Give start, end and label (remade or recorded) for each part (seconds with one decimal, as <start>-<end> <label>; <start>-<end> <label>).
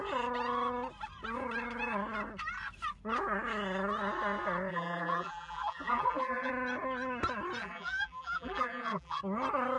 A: 0.0-4.7 recorded; 4.7-6.5 remade; 6.5-7.6 recorded; 7.6-9.2 remade; 9.2-9.8 recorded